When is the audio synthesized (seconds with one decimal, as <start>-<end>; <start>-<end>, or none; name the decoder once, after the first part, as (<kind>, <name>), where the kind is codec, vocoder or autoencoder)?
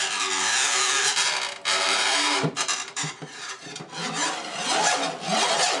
1.7-3.7 (vocoder, BigVGAN v2)